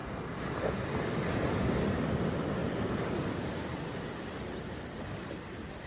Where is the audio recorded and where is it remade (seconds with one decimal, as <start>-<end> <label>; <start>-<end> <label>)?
0.0-5.9 recorded